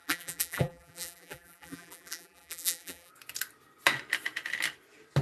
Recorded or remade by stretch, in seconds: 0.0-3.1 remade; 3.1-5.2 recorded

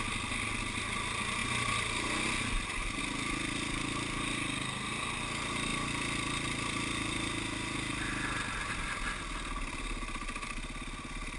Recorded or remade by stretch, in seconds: 0.0-11.4 recorded